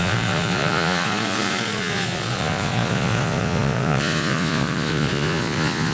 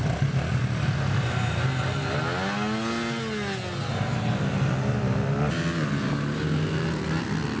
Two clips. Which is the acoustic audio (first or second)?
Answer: second